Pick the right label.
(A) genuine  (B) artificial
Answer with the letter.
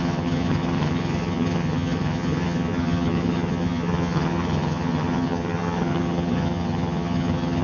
B